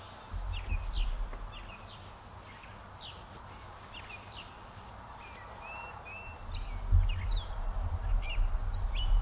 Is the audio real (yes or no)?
yes